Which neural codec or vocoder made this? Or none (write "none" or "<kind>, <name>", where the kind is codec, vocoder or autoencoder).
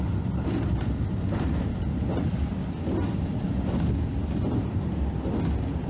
none